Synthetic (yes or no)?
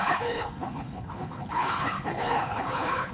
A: yes